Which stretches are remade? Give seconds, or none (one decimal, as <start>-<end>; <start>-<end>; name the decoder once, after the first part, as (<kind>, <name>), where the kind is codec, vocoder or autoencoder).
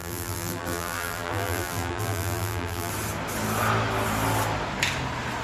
0.0-2.9 (vocoder, BigVGAN v2)